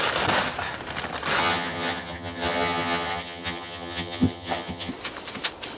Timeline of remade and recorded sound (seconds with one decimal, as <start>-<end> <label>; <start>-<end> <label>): 0.0-1.4 recorded; 1.4-4.9 remade; 4.9-5.8 recorded